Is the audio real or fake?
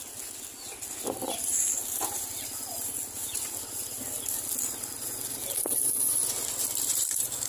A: real